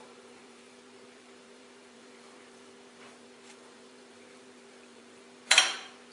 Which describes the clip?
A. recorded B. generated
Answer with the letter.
B